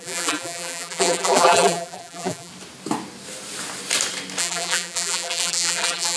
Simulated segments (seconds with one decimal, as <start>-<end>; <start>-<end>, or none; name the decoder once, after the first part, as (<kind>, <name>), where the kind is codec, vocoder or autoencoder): 0.0-2.5 (vocoder, BigVGAN v2); 4.4-6.2

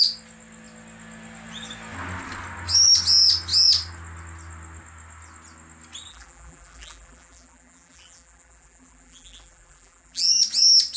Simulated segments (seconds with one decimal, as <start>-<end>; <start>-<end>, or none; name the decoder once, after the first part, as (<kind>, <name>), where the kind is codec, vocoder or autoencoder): 6.1-10.3 (vocoder, BigVGAN v2)

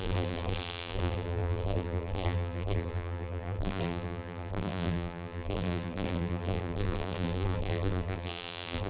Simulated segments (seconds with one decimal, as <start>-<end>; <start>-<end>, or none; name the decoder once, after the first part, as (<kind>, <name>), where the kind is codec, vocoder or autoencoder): 0.0-8.9 (vocoder, BigVGAN v2)

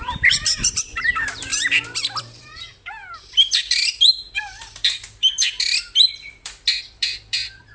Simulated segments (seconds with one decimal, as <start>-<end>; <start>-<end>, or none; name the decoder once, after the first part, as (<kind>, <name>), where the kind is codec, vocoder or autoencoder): 0.0-7.7 (vocoder, BigVGAN v2)